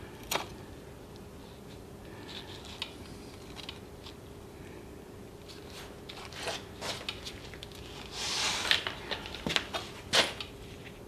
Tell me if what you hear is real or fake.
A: real